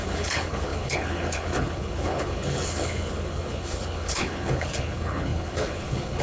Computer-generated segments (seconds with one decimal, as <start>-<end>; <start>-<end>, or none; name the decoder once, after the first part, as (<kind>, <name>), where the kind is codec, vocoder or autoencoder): 0.0-6.2 (codec, HILCodec)